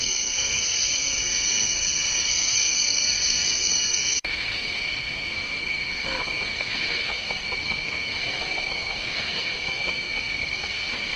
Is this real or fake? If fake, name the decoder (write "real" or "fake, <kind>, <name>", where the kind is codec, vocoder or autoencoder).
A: fake, codec, SNAC